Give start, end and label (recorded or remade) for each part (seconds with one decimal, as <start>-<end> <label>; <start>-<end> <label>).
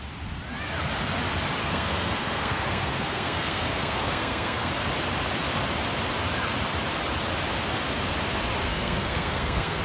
0.0-1.6 recorded; 1.6-4.7 remade; 4.7-8.6 recorded; 8.6-9.8 remade